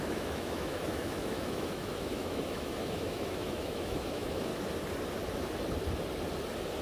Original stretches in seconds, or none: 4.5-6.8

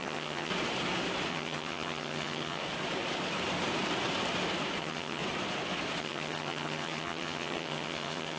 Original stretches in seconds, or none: 0.5-1.3; 2.6-4.8; 5.2-6.0

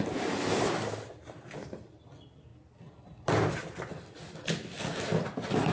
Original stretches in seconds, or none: 0.0-5.7